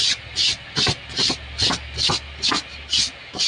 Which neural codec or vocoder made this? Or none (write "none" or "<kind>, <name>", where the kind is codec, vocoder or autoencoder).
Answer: none